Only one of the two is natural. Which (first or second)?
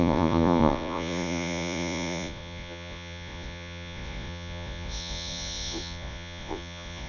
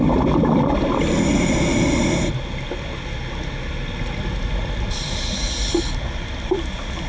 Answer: second